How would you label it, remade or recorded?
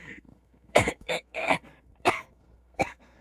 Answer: remade